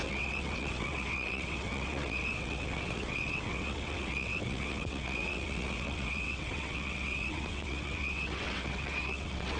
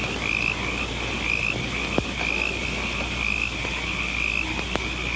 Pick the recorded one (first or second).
second